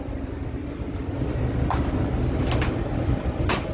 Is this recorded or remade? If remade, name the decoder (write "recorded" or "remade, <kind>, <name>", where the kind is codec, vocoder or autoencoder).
recorded